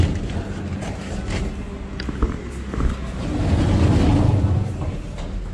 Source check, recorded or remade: recorded